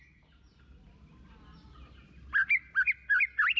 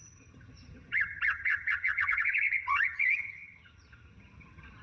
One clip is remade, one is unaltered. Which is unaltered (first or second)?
first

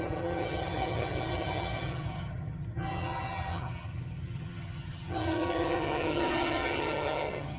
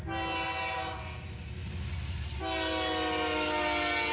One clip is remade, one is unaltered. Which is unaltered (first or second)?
second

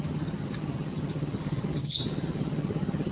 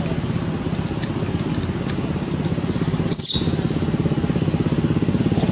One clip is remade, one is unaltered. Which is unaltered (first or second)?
second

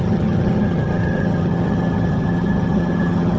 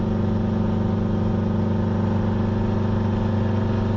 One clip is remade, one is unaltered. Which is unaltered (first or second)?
second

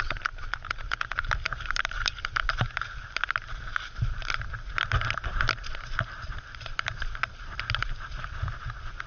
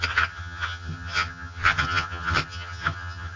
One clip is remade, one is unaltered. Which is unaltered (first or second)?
first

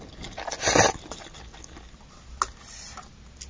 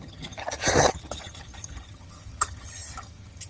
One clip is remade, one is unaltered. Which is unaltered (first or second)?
first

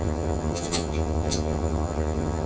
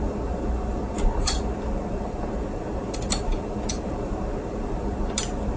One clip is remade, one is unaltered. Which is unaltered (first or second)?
second